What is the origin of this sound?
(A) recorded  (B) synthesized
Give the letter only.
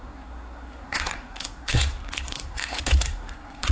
B